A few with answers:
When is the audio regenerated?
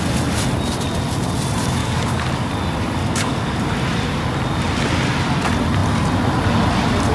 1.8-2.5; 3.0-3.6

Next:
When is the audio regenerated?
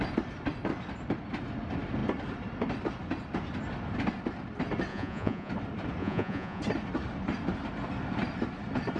4.9-5.5; 6.0-6.6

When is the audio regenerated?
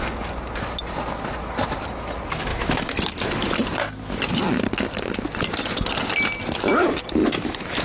2.5-3.0; 7.2-7.8